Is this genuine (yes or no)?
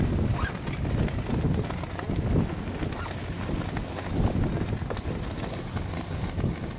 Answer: yes